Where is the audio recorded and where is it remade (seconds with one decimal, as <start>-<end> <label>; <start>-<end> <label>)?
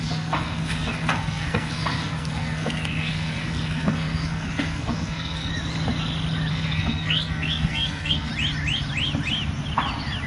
0.0-5.5 remade; 5.5-6.5 recorded; 6.5-8.3 remade; 8.3-10.3 recorded